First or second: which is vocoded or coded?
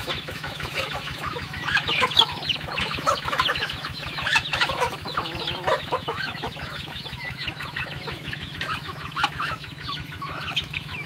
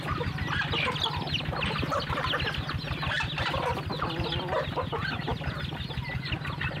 first